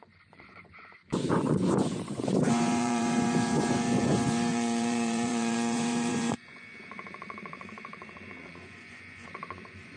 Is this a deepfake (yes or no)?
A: yes